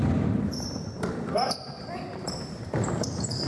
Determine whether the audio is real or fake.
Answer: fake